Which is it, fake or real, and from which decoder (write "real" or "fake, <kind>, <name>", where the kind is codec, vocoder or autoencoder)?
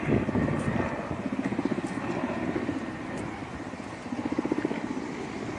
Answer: real